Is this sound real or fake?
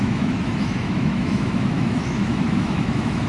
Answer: fake